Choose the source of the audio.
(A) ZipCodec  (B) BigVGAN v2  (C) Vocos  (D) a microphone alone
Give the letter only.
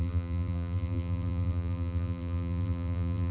B